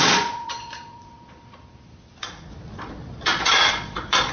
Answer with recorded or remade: remade